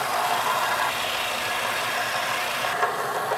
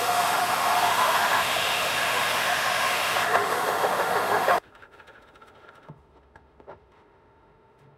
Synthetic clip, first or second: second